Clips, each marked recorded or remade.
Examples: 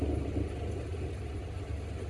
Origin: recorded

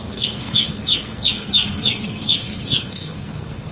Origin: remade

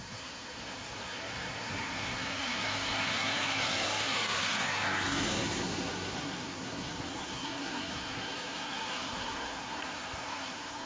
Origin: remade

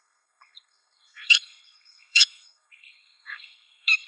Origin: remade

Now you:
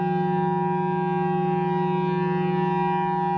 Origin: recorded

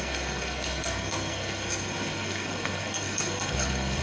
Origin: remade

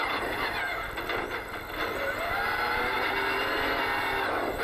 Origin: recorded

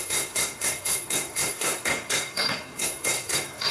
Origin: remade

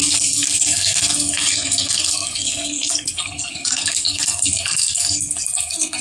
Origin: remade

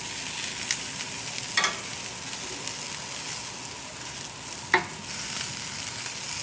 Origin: recorded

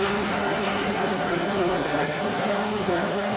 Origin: remade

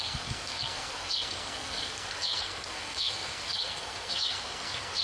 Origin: remade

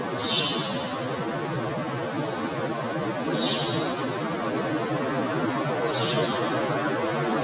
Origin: recorded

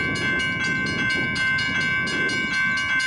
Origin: recorded